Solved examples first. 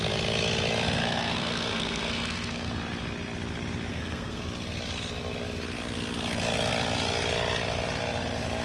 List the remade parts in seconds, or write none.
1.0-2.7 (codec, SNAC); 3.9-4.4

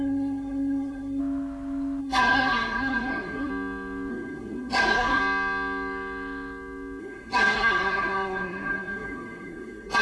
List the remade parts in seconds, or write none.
0.0-1.2 (codec, SNAC); 2.0-3.5; 4.1-5.2; 7.0-10.0

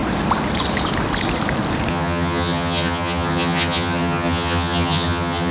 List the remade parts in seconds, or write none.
1.9-5.5 (vocoder, HiFi-GAN)

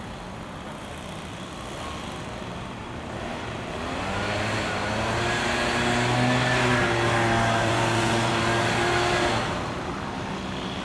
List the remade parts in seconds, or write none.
7.6-8.3 (vocoder, Vocos)